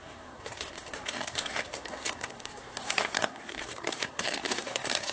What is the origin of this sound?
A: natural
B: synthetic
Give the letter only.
B